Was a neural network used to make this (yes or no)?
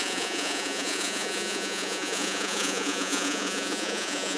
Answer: yes